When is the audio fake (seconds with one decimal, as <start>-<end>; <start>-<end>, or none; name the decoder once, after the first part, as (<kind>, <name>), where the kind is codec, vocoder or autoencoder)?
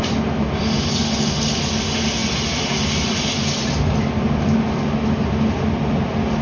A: none